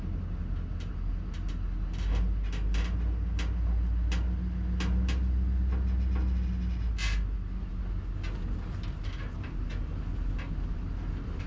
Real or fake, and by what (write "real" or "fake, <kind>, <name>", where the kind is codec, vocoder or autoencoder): real